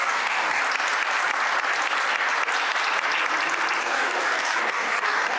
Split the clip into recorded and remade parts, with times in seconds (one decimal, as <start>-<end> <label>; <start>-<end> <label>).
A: 0.0-0.6 remade; 0.6-3.8 recorded; 3.8-5.4 remade